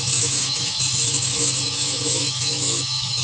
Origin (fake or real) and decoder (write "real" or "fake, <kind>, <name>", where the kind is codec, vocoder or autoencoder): fake, autoencoder, DAC-VAE